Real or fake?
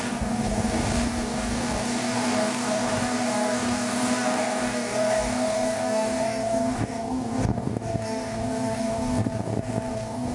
fake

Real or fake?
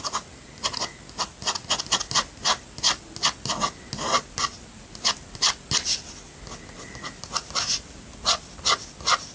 real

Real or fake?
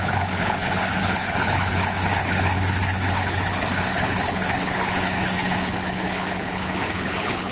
fake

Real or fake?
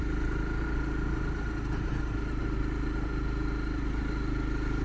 real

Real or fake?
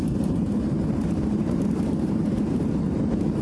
fake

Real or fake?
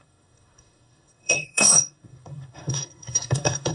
fake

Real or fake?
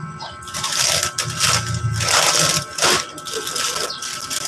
real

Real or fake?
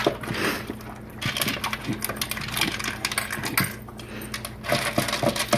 real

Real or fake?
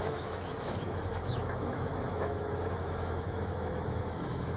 fake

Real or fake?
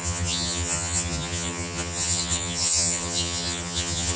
fake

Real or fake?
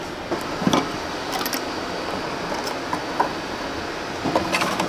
real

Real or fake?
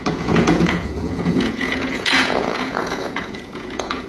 fake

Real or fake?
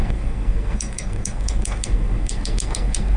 fake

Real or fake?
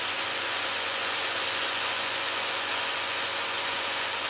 fake